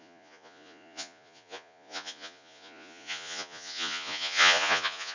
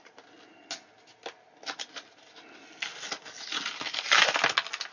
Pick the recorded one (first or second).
second